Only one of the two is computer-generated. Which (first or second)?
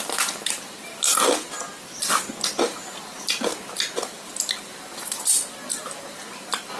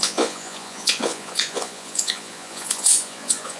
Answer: second